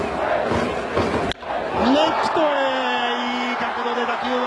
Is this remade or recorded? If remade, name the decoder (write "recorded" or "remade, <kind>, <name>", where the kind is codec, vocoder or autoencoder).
recorded